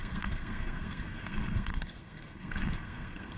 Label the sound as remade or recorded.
remade